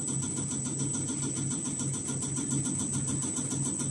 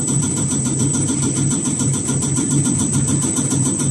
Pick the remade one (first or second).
second